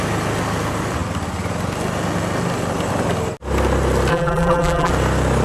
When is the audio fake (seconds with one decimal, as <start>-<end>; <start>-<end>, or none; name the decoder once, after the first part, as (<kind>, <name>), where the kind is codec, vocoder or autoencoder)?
4.1-4.9 (vocoder, BigVGAN v2)